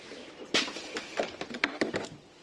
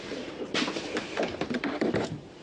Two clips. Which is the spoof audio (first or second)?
second